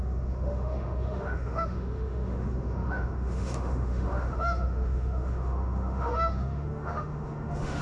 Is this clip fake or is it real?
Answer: fake